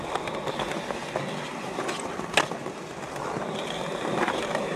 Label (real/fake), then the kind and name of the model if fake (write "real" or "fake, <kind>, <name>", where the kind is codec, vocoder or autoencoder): real